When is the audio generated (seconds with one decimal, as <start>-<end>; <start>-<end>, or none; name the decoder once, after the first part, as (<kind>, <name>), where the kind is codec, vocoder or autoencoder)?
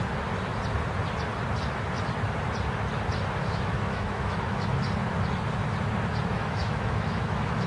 3.4-4.7 (autoencoder, DAC-VAE); 6.3-7.7